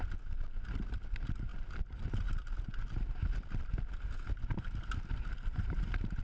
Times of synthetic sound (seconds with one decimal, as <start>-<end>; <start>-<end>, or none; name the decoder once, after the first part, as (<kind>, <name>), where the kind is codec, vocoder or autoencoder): 1.5-2.3 (vocoder, BigVGAN v2)